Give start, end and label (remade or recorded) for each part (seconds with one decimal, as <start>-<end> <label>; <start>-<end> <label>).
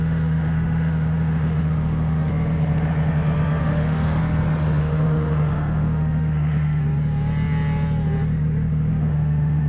0.0-2.3 remade; 2.3-3.6 recorded; 3.6-4.2 remade; 4.2-4.8 recorded; 4.8-6.8 remade; 6.8-8.9 recorded; 8.9-9.7 remade